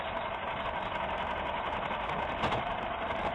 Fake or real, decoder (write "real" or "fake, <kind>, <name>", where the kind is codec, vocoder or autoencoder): real